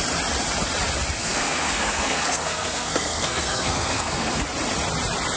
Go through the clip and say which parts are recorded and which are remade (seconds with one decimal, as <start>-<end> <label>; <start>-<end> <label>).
0.0-1.2 recorded; 1.2-4.4 remade; 4.4-5.4 recorded